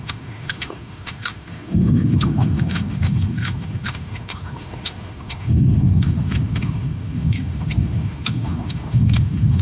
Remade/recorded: remade